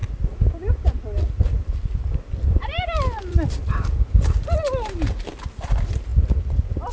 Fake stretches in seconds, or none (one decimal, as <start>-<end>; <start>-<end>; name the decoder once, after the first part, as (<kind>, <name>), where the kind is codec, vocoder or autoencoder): 0.0-4.1 (vocoder, BigVGAN v2)